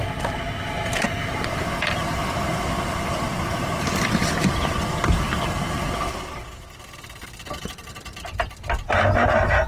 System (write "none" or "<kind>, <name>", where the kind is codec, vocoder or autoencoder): vocoder, BigVGAN v2